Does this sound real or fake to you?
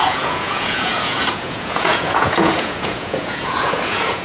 fake